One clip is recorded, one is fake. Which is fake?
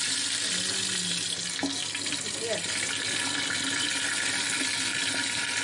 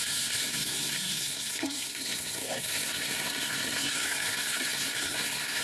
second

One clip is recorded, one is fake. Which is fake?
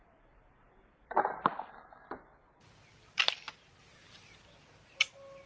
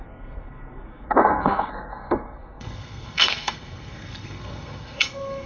second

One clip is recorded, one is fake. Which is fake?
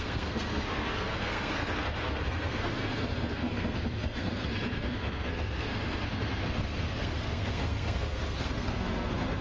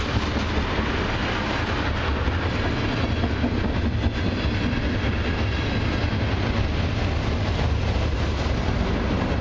first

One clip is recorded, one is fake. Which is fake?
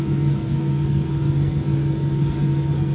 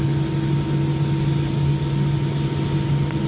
first